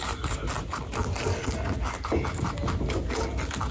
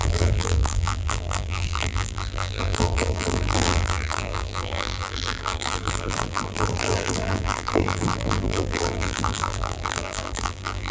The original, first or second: first